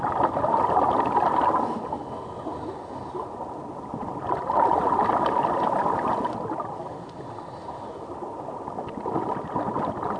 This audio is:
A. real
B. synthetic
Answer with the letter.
A